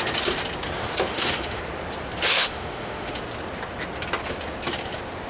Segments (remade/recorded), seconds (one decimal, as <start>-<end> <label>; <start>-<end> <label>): 0.0-1.1 recorded; 1.1-1.6 remade; 1.6-2.3 recorded; 2.3-3.2 remade; 3.2-5.3 recorded